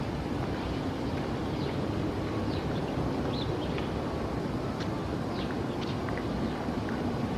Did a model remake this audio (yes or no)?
yes